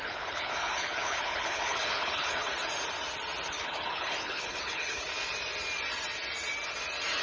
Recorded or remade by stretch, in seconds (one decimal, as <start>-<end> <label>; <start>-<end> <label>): 0.0-2.5 remade; 2.5-3.5 recorded; 3.5-5.1 remade; 5.1-7.2 recorded